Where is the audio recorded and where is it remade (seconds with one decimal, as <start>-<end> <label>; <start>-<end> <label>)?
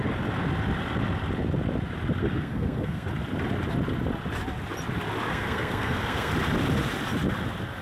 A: 0.0-2.2 recorded; 2.2-3.1 remade; 3.1-5.3 recorded; 5.3-6.3 remade; 6.3-7.8 recorded